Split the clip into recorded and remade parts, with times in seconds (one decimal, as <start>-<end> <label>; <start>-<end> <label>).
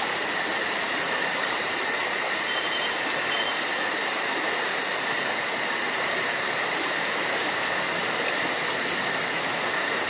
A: 0.0-10.1 remade